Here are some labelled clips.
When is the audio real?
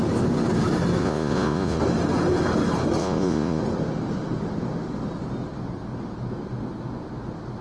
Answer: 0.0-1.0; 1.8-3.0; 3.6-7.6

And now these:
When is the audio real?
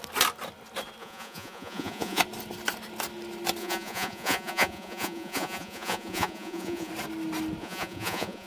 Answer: 0.0-1.0; 2.2-3.6; 6.9-7.6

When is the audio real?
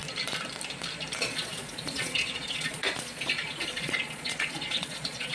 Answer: 0.0-1.2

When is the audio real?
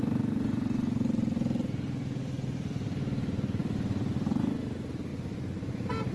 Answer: 0.0-6.1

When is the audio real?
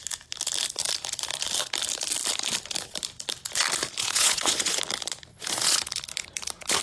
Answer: 0.0-4.0; 4.8-5.3; 5.8-6.8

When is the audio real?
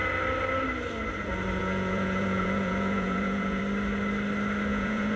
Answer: 0.0-1.6; 3.6-4.7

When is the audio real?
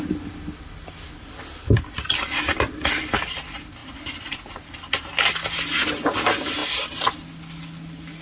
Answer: 0.0-8.2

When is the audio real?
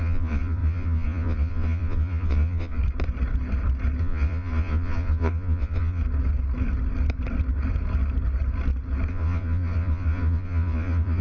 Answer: 2.8-4.0; 6.0-9.1